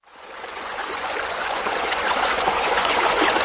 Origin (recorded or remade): remade